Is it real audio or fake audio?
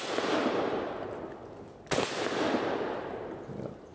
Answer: real